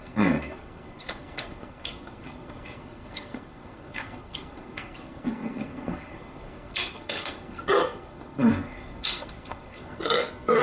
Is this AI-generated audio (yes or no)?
yes